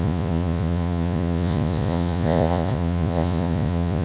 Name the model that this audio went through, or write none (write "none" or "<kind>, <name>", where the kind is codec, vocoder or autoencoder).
vocoder, Vocos